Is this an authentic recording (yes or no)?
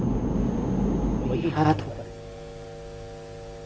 yes